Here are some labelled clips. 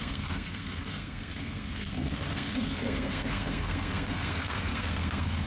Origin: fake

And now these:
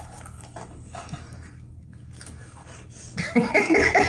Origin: fake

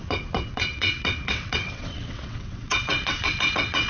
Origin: fake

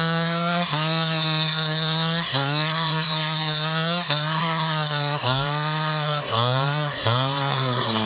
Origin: fake